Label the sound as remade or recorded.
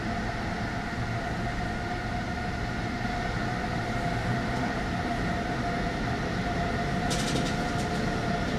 recorded